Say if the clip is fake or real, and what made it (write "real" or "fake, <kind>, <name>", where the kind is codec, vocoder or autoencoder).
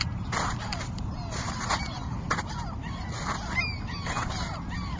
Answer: real